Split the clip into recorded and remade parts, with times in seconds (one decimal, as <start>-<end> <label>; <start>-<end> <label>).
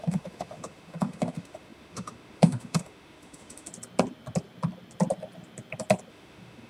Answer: 0.0-3.7 remade; 3.7-6.1 recorded; 6.1-6.7 remade